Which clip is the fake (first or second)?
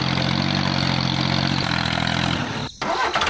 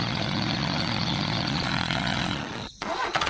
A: second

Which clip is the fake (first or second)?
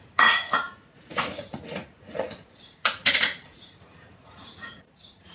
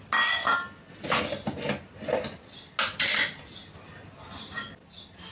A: first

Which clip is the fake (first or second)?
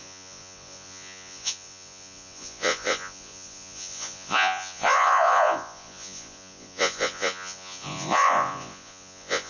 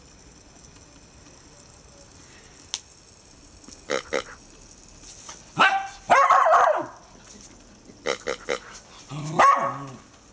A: first